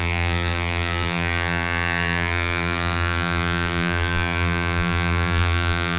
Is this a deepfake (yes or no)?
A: yes